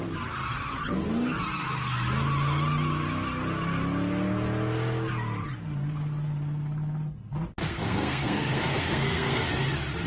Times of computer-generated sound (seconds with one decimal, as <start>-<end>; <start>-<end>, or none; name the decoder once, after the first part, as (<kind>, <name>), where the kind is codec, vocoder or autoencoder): 7.6-9.5 (codec, SNAC)